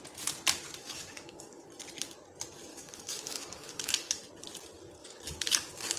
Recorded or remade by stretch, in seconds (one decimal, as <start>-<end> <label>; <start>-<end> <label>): 0.0-0.8 recorded; 0.8-1.7 remade; 1.7-2.7 recorded; 2.7-4.3 remade; 4.3-5.0 recorded; 5.0-6.0 remade